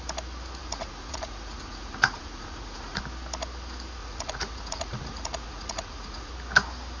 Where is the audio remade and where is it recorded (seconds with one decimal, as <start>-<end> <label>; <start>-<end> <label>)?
0.0-0.6 recorded; 0.6-3.0 remade; 3.0-4.0 recorded; 4.0-6.3 remade; 6.3-7.0 recorded